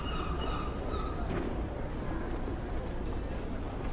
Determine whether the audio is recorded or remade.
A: recorded